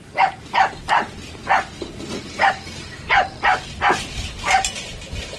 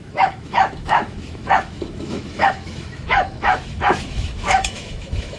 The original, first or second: first